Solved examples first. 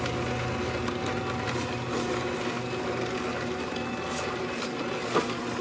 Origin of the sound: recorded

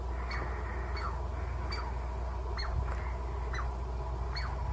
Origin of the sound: recorded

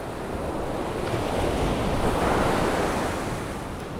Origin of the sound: recorded